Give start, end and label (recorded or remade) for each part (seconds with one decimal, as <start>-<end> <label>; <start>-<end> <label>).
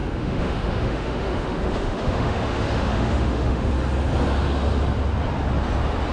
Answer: 0.0-3.7 remade; 3.7-6.1 recorded